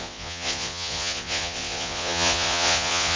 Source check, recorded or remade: remade